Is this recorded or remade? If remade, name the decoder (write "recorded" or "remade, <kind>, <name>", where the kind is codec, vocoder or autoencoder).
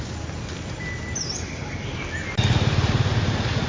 recorded